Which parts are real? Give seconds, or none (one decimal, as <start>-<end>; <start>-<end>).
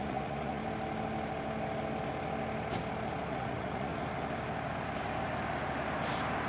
0.6-3.3; 3.9-6.5